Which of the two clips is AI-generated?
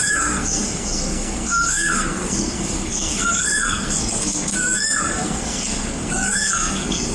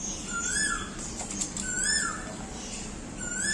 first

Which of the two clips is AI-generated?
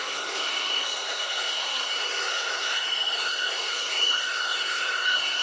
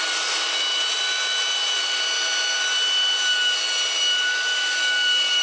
first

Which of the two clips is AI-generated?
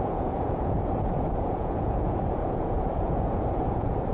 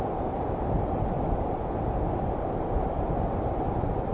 first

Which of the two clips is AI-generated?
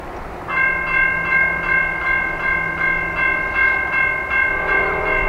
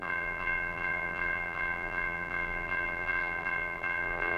second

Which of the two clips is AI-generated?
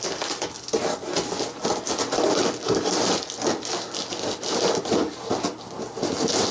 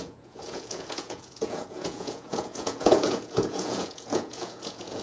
second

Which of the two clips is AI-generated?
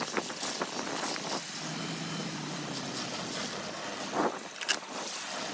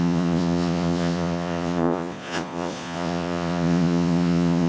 second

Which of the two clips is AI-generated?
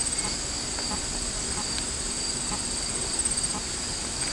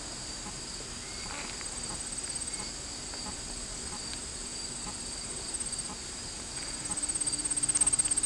first